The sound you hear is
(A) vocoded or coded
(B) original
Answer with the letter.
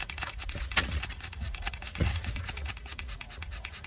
A